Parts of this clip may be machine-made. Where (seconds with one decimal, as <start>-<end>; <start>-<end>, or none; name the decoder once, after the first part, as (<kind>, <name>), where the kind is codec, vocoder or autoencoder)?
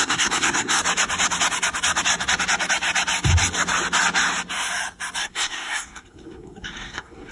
0.0-0.8 (codec, SNAC); 5.2-7.3